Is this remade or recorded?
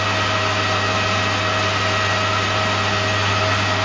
recorded